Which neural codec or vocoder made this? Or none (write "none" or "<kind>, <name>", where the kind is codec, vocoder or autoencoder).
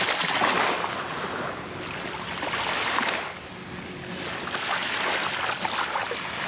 none